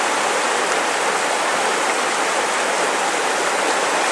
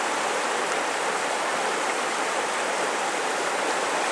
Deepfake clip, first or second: second